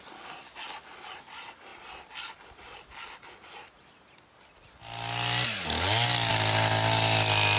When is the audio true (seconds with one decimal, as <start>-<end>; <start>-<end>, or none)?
0.0-7.6